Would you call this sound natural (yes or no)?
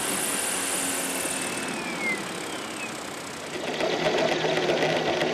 yes